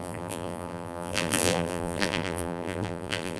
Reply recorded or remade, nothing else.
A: remade